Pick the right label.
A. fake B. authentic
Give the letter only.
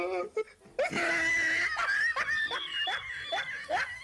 B